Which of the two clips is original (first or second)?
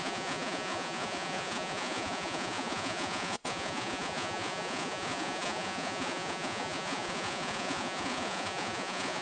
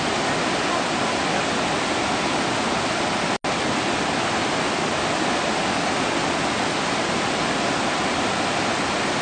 second